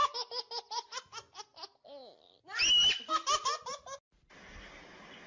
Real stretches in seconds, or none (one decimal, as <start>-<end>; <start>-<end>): 0.0-5.3